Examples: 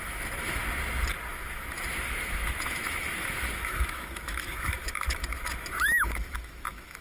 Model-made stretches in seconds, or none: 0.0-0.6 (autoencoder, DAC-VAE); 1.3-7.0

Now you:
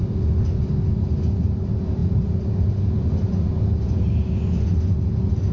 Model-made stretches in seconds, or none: none

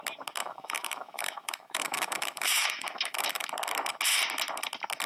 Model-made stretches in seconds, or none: 0.4-3.5 (autoencoder, DAC-VAE)

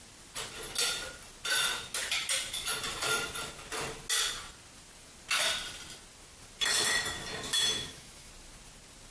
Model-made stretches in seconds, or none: 7.5-8.3 (autoencoder, DAC-VAE)

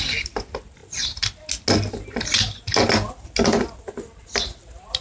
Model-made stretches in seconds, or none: none

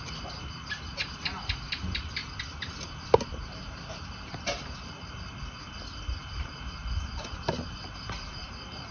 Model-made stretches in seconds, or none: none

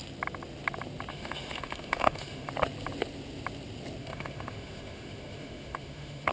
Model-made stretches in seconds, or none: 1.1-2.5 (autoencoder, DAC-VAE); 4.0-6.3